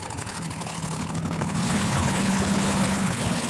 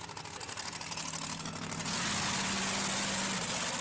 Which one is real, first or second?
second